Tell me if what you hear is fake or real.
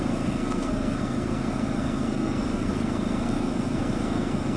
fake